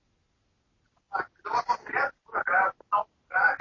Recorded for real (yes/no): yes